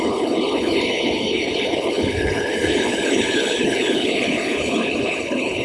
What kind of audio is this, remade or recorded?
remade